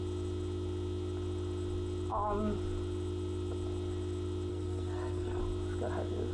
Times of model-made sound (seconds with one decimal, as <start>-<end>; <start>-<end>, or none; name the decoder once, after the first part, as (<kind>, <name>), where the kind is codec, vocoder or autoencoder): 4.5-5.4 (codec, SNAC)